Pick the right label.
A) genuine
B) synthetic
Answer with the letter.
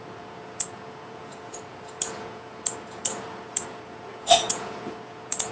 B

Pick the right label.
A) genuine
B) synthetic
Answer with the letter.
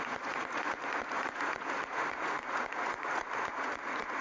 B